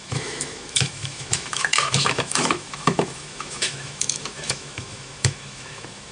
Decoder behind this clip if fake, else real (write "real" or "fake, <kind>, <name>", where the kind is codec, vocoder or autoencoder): fake, autoencoder, DAC-VAE